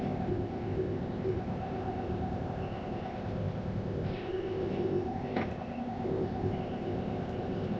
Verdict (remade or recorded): remade